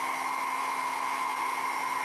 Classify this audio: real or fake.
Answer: real